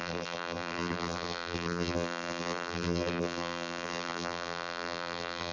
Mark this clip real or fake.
fake